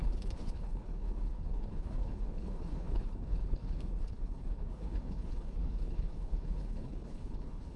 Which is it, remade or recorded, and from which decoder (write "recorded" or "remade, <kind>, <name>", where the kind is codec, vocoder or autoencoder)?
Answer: remade, codec, HILCodec